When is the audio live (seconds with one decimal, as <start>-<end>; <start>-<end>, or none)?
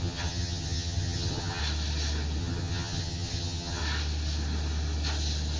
1.6-2.4; 3.8-5.6